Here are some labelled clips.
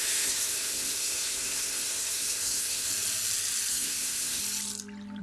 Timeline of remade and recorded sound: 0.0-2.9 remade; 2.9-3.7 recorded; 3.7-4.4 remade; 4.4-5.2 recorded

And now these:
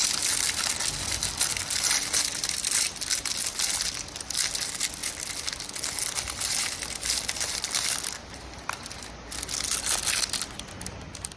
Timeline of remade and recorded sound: 0.0-11.4 recorded

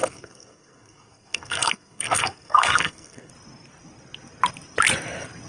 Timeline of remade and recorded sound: 0.0-3.3 remade; 3.3-5.5 recorded

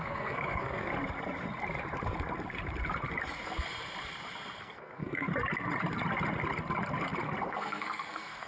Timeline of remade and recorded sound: 0.0-0.9 remade; 0.9-4.6 recorded; 4.6-5.3 remade; 5.3-7.4 recorded; 7.4-8.5 remade

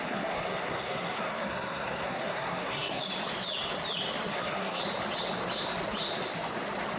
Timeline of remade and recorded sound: 0.0-3.0 remade; 3.0-4.3 recorded; 4.3-4.8 remade; 4.8-7.0 recorded

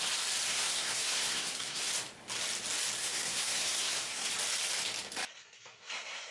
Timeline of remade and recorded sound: 0.0-0.5 recorded; 0.5-1.9 remade; 1.9-3.0 recorded; 3.0-4.3 remade; 4.3-5.3 recorded; 5.3-6.3 remade

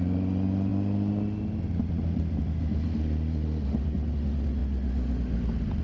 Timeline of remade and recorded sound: 0.0-5.8 recorded

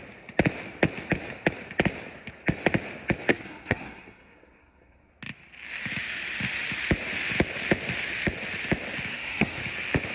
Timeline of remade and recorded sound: 0.0-3.3 recorded; 3.3-5.1 remade; 5.1-9.1 recorded; 9.1-9.6 remade; 9.6-10.1 recorded